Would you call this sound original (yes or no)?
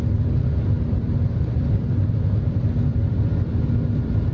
no